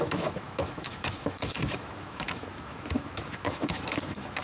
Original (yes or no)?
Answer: no